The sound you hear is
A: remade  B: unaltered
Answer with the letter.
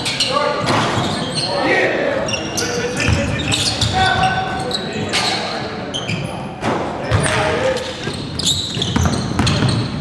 B